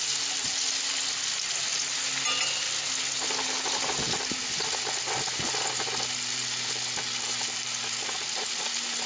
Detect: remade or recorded recorded